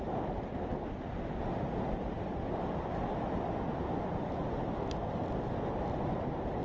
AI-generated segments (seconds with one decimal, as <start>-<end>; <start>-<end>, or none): none